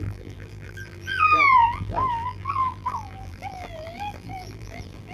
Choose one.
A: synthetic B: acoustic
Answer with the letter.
A